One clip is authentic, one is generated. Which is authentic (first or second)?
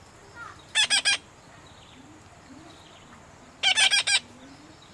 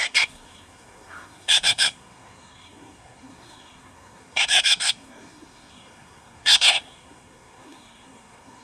first